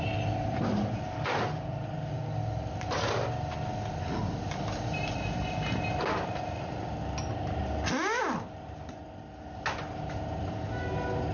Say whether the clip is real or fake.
real